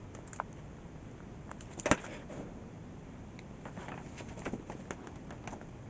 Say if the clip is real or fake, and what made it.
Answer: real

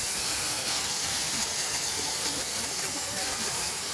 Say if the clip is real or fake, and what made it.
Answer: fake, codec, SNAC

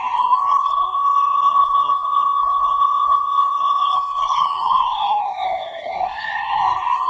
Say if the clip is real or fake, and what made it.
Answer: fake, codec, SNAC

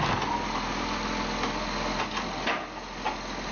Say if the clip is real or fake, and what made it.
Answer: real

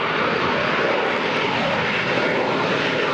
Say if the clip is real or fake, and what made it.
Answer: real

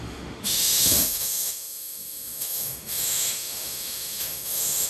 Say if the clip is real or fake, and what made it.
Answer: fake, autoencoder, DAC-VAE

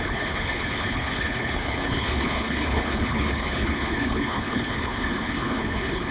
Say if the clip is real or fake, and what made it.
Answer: fake, codec, HILCodec